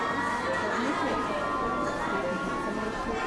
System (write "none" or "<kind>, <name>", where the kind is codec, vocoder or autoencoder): none